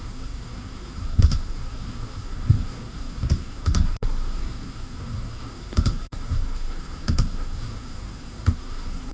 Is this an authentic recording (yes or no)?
no